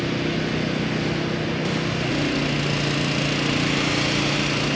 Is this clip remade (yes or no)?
no